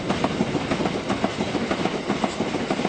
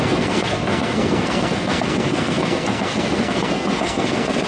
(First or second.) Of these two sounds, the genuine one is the first